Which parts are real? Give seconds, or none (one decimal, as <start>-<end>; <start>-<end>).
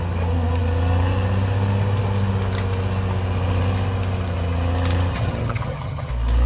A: 0.0-5.1; 6.1-6.5